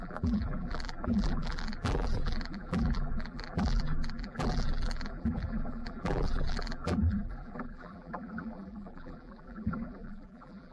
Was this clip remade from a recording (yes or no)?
yes